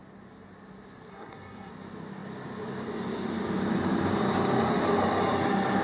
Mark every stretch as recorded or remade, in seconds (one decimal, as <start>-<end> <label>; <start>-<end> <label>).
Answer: 0.0-1.1 recorded; 1.1-1.7 remade; 1.7-5.8 recorded

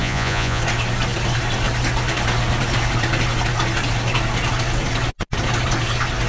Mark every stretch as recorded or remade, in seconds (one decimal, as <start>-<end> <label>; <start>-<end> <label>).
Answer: 0.0-0.6 remade; 0.6-6.3 recorded

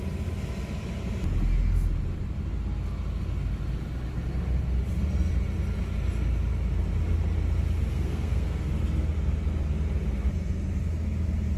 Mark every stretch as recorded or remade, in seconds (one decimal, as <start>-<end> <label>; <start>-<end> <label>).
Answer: 0.0-7.9 recorded; 7.9-8.7 remade; 8.7-11.6 recorded

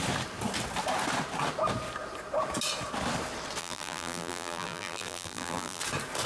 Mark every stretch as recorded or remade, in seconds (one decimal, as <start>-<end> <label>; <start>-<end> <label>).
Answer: 0.0-3.6 recorded; 3.6-5.8 remade; 5.8-6.3 recorded

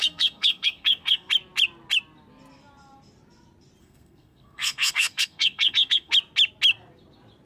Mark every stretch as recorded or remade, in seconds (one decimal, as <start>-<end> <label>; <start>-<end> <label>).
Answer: 0.0-1.3 remade; 1.3-3.8 recorded; 3.8-6.1 remade; 6.1-7.5 recorded

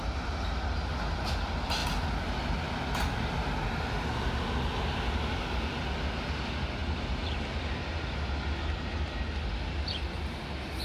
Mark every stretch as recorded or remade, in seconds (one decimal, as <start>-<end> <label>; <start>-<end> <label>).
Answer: 0.0-10.8 recorded